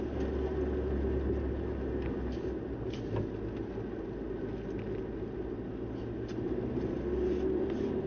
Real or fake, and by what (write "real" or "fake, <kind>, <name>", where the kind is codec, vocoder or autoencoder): real